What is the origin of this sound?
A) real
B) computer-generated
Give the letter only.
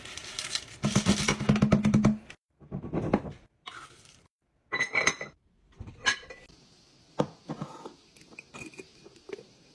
A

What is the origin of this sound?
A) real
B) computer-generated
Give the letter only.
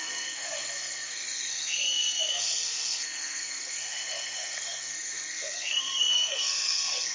B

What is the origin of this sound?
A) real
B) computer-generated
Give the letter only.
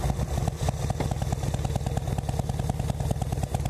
A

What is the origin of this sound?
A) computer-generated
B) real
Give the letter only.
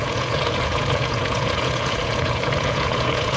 A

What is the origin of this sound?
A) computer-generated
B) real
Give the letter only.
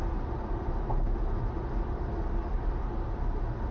B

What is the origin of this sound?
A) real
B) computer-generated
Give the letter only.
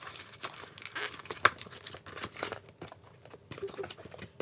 A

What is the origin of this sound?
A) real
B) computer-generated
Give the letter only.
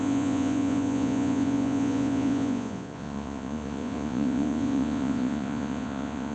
B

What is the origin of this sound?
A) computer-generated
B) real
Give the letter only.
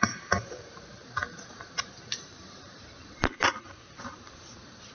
A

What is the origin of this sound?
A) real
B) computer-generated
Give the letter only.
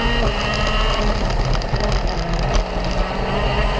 A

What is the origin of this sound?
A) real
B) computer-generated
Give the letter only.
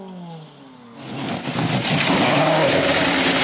A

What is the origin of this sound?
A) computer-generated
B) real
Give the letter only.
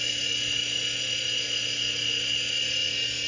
B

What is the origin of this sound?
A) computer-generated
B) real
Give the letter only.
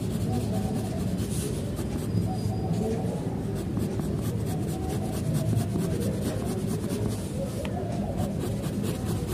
B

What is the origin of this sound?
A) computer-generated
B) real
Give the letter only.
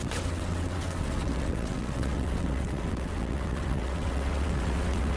A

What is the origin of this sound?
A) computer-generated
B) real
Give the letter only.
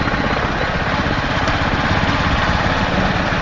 B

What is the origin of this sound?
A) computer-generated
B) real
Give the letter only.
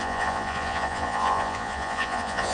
A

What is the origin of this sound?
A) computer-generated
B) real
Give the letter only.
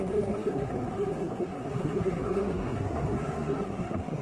A